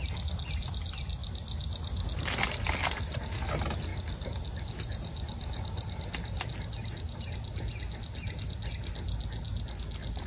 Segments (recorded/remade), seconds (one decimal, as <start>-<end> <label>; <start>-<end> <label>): 0.0-10.3 recorded